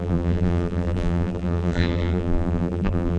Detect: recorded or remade remade